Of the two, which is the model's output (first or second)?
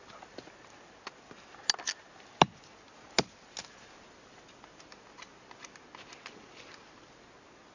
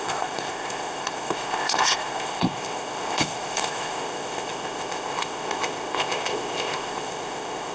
second